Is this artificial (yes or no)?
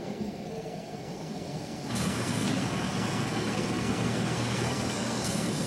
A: yes